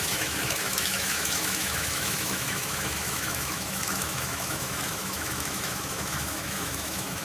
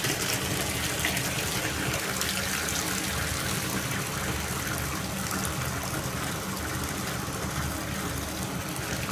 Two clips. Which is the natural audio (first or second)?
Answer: second